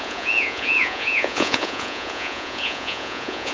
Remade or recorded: remade